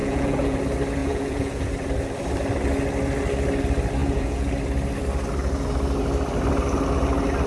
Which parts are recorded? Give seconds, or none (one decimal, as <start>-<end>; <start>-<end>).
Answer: 0.6-1.0; 1.7-4.0; 4.5-7.5

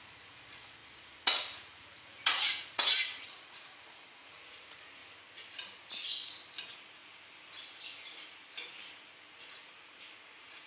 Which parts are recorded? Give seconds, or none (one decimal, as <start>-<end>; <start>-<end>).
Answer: 5.0-6.6; 7.0-9.3